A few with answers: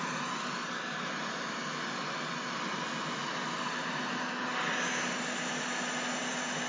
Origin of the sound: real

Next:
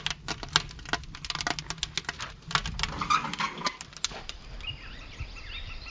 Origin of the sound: real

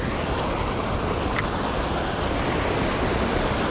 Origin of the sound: real